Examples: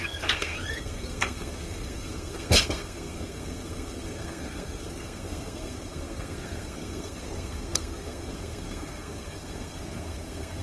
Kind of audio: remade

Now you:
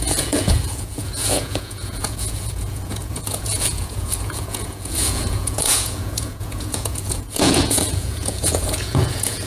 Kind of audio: remade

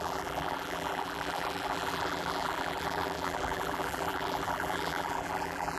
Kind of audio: remade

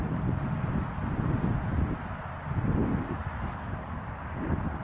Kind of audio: recorded